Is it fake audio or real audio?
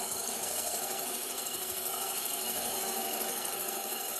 fake